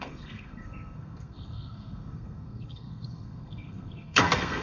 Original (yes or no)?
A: no